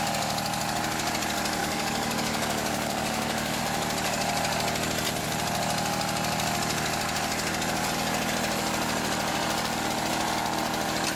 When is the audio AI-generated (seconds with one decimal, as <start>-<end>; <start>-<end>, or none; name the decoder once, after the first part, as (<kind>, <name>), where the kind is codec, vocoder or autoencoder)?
1.6-3.6 (codec, DAC)